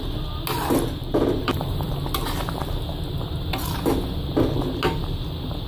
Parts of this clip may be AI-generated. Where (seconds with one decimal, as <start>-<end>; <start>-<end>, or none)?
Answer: 1.0-1.9

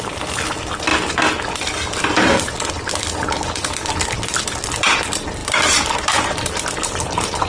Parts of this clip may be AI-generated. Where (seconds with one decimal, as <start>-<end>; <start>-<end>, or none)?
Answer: none

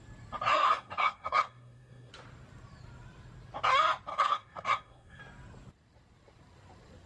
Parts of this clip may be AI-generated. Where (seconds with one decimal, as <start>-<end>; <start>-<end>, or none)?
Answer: 0.5-2.1; 4.1-5.2